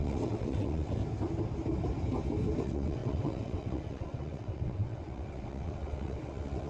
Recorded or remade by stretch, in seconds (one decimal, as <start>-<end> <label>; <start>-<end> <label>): 0.0-1.0 remade; 1.0-2.6 recorded; 2.6-6.7 remade